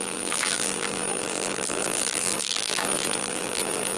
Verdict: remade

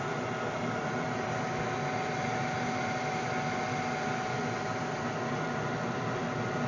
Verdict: recorded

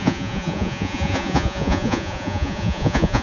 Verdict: remade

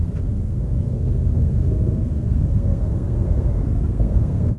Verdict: remade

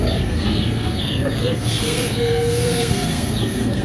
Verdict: remade